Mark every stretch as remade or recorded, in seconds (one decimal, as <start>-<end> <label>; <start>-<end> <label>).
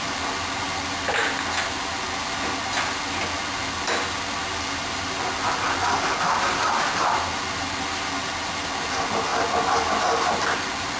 0.0-1.2 remade; 1.2-1.8 recorded; 1.8-9.3 remade; 9.3-10.0 recorded; 10.0-11.0 remade